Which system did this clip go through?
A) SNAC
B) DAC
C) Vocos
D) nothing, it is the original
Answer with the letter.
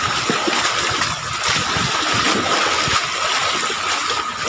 D